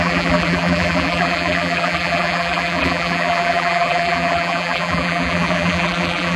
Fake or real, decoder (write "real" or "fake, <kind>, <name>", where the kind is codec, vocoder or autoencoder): fake, vocoder, BigVGAN v2